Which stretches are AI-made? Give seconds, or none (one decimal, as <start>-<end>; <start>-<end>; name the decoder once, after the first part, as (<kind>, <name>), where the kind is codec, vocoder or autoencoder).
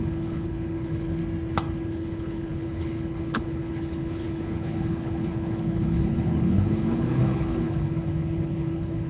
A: 0.0-1.2 (codec, HILCodec); 1.9-9.1